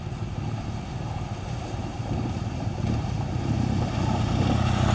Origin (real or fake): fake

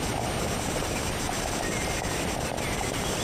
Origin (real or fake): real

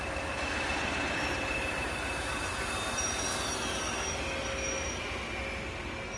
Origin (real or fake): real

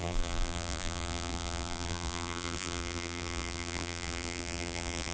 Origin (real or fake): fake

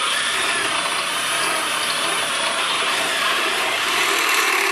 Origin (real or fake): fake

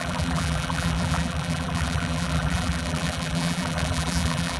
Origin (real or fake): fake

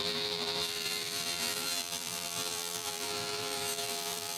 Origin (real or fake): fake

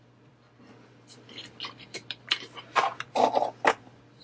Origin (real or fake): real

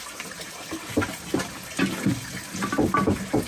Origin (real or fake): real